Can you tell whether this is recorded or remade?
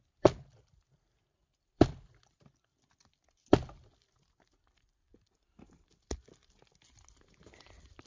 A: recorded